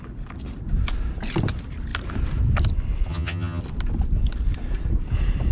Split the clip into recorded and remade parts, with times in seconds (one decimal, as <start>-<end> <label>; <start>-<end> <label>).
0.0-3.1 recorded; 3.1-3.6 remade; 3.6-5.5 recorded